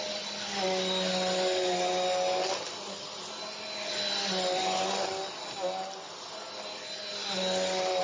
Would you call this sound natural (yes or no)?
yes